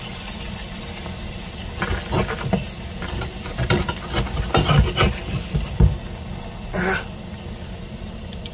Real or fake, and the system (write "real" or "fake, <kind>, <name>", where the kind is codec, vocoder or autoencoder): real